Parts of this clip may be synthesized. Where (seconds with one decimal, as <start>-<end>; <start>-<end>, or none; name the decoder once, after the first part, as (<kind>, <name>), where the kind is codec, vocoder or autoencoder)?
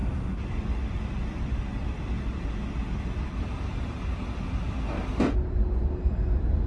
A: none